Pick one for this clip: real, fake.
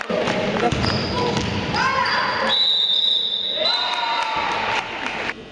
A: real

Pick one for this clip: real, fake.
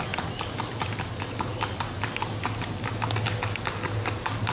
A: real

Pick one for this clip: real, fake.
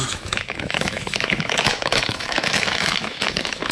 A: fake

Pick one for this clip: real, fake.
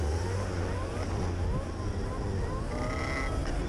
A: real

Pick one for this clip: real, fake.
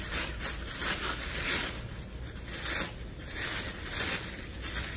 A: real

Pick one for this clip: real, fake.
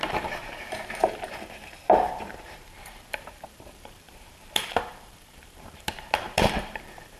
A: fake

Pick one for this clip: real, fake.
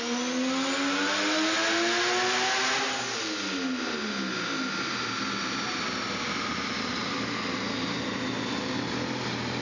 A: real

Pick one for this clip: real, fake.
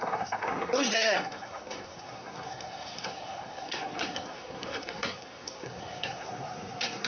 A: fake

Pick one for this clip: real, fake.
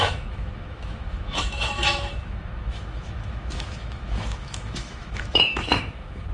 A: fake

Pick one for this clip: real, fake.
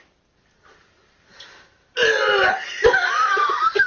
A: real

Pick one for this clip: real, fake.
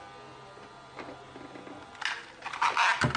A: real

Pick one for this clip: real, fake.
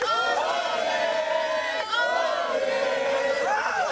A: fake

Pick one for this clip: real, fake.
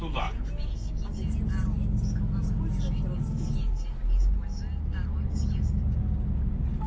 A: real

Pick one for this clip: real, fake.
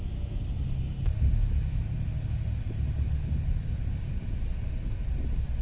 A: real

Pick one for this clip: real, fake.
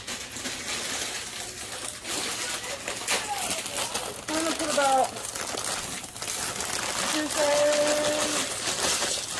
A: real